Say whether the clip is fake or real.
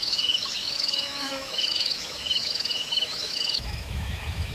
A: fake